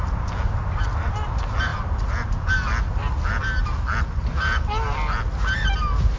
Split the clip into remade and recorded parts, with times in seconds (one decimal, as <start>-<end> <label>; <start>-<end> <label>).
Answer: 0.0-6.2 recorded